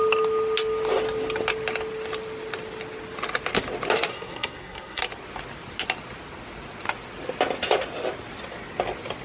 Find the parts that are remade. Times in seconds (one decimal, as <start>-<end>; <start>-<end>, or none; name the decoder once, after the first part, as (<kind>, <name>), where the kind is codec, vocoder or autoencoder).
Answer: 4.1-5.0 (codec, SNAC)